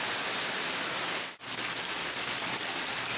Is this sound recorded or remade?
recorded